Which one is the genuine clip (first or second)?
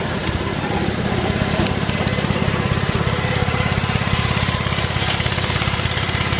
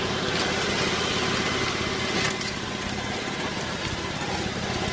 second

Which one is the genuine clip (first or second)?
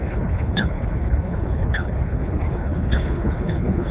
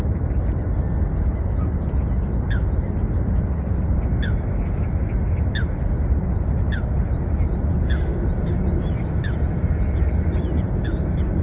second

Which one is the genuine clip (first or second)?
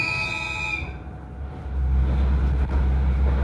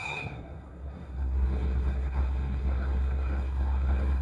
first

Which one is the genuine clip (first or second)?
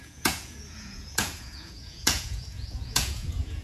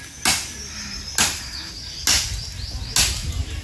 second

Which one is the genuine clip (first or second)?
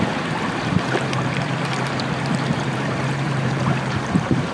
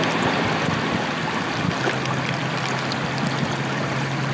second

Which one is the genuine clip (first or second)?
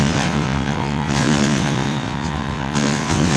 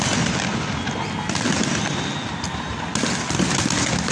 second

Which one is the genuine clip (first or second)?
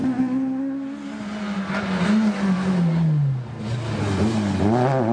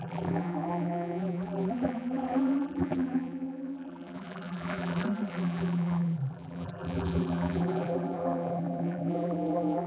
first